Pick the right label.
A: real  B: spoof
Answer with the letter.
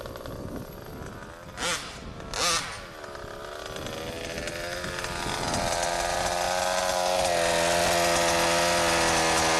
A